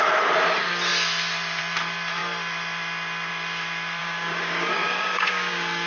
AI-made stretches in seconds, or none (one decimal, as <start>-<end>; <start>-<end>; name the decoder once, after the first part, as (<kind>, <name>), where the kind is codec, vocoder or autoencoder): 4.0-5.9 (codec, DAC)